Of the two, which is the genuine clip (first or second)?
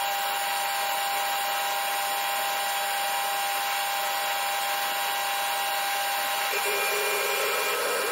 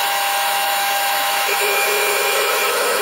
first